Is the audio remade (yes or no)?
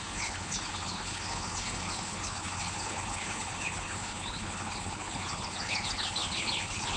yes